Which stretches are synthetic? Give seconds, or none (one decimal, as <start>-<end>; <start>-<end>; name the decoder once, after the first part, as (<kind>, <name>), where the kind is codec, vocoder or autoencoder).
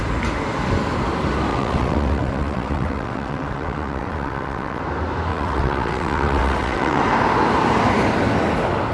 1.5-4.8 (vocoder, WaveNeXt); 5.3-7.0